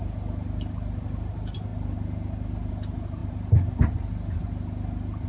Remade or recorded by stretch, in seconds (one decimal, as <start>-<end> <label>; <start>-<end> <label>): 0.0-5.3 recorded